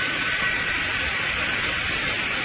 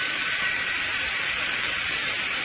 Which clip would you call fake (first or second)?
second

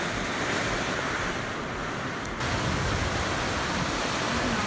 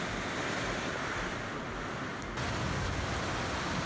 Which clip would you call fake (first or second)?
first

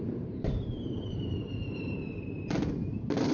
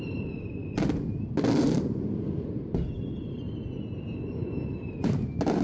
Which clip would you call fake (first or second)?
first